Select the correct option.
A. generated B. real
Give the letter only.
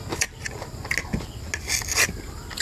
B